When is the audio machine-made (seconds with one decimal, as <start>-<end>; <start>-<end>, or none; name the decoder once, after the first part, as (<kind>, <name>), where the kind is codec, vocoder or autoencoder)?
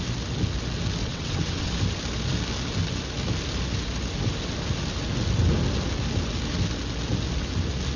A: 1.0-1.7 (vocoder, WaveNeXt)